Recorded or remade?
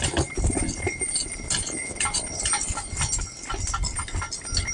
recorded